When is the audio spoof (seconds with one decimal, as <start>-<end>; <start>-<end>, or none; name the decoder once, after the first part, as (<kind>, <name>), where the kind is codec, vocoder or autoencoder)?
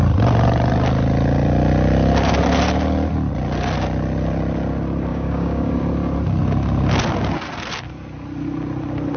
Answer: 5.1-5.7 (codec, DAC)